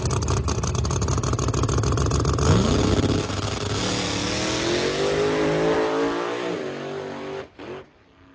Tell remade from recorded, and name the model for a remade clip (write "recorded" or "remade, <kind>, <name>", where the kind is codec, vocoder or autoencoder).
recorded